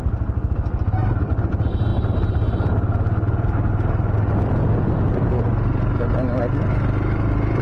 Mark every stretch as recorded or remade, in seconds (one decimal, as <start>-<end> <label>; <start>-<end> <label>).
0.0-7.6 recorded